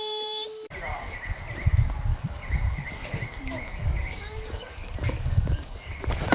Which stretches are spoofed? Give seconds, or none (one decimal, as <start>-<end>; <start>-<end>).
0.9-1.4; 2.1-6.3